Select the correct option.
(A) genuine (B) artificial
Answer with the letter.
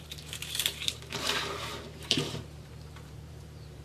B